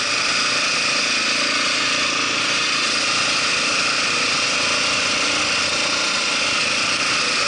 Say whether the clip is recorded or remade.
recorded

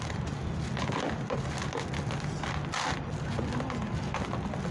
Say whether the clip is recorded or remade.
recorded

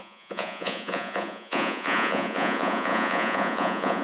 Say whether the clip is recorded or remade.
remade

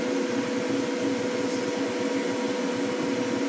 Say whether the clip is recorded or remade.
recorded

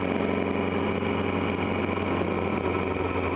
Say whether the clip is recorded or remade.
recorded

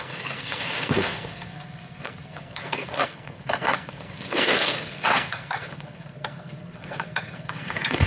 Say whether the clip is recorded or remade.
remade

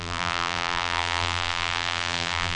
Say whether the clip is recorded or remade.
remade